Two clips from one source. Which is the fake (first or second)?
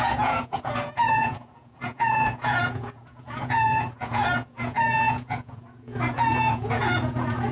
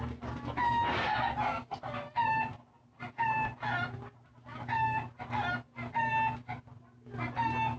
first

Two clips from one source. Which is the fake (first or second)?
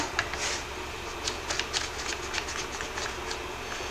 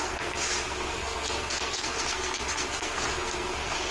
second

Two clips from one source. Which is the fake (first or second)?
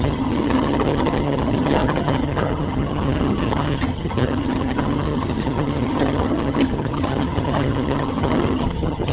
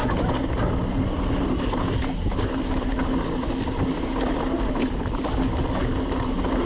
first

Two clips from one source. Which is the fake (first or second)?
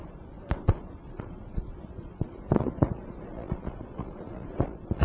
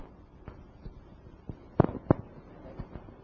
first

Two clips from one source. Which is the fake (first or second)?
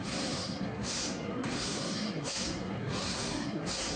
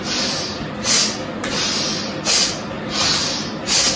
first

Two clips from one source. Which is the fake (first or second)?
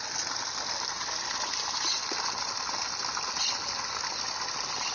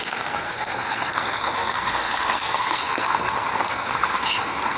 second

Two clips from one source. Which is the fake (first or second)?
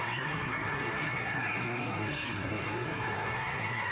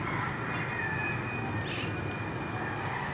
first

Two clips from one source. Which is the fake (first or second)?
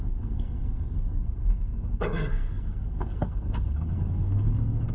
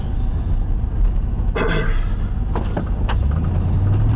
first